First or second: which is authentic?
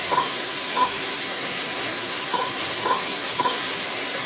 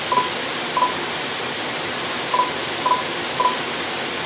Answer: second